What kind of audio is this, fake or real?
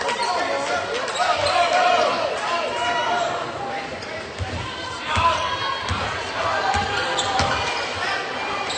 real